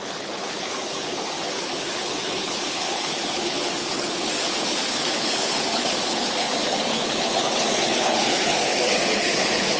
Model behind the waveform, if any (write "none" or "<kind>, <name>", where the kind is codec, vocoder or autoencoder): codec, HILCodec